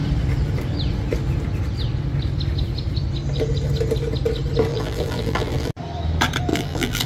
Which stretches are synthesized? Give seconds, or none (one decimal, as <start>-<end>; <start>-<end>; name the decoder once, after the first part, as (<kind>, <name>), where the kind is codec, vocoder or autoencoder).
4.7-5.7 (vocoder, BigVGAN v2); 6.5-7.1